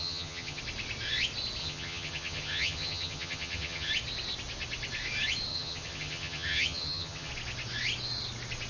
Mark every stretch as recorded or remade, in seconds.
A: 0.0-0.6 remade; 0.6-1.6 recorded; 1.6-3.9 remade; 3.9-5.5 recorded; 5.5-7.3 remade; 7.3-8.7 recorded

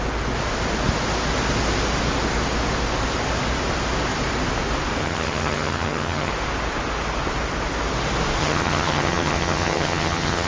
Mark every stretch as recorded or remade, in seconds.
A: 0.0-5.0 recorded; 5.0-6.3 remade; 6.3-8.4 recorded; 8.4-10.5 remade

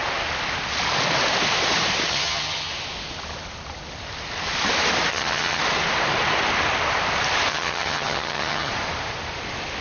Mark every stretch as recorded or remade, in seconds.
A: 0.0-2.1 recorded; 2.1-2.7 remade; 2.7-5.1 recorded; 5.1-5.6 remade; 5.6-7.5 recorded; 7.5-8.7 remade; 8.7-9.8 recorded

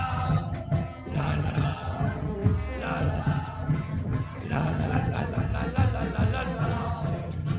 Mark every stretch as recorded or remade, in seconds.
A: 0.0-2.3 remade; 2.3-3.0 recorded; 3.0-5.5 remade; 5.5-6.6 recorded; 6.6-7.6 remade

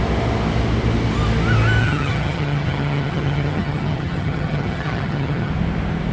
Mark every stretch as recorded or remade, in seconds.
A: 0.0-1.8 recorded; 1.8-5.5 remade; 5.5-6.1 recorded

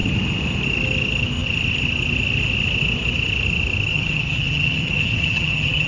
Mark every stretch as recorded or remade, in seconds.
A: 0.0-3.9 recorded; 3.9-5.9 remade

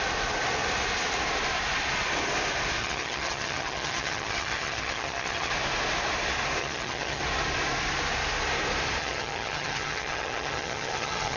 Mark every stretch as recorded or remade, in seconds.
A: 0.0-2.8 recorded; 2.8-5.5 remade; 5.5-6.6 recorded; 6.6-7.2 remade; 7.2-9.0 recorded; 9.0-11.4 remade

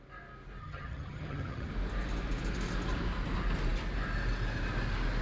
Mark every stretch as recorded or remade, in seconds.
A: 0.0-0.6 recorded; 0.6-1.7 remade; 1.7-5.2 recorded